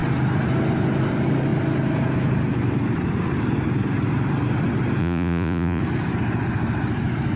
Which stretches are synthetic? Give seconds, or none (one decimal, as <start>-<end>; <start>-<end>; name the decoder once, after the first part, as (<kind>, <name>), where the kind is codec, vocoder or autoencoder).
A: 5.0-5.8 (vocoder, Vocos)